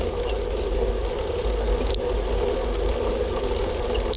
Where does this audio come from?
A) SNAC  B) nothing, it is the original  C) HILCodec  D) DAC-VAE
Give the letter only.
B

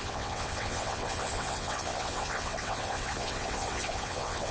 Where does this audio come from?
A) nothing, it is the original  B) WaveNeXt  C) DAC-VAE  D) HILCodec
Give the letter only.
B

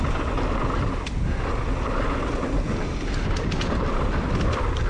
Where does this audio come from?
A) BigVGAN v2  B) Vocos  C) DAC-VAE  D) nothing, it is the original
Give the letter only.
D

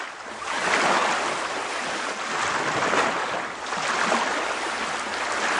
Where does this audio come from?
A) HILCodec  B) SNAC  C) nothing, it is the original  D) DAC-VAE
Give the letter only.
C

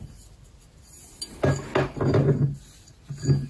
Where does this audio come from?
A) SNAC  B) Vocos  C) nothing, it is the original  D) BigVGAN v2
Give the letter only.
C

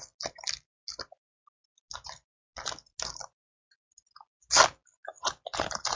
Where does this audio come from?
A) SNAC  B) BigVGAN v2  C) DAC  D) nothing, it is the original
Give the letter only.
D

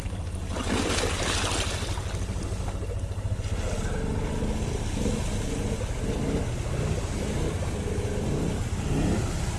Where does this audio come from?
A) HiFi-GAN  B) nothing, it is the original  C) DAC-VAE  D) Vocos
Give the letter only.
B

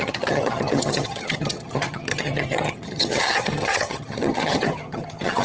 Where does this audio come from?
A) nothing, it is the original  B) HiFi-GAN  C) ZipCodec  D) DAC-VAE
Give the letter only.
B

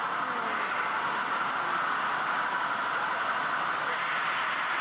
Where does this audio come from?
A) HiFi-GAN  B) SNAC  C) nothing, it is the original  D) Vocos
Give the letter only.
C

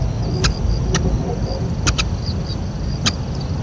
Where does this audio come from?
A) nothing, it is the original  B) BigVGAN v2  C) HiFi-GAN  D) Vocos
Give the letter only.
A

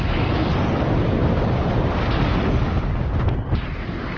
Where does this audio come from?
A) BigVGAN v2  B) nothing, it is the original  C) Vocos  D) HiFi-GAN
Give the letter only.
B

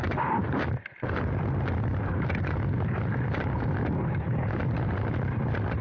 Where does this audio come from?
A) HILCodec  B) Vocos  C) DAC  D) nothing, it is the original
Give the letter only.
D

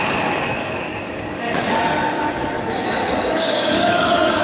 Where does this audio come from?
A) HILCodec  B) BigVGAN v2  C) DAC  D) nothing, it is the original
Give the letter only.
C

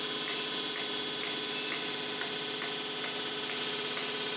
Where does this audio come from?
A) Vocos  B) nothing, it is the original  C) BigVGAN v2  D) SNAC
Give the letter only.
B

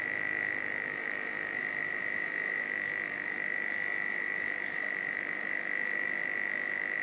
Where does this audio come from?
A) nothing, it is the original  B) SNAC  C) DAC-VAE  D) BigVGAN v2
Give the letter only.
C